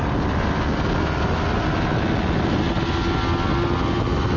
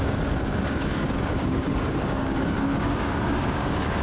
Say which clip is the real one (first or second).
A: first